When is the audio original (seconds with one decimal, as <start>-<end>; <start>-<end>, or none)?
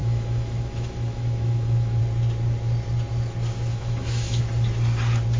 2.0-3.7; 4.4-5.4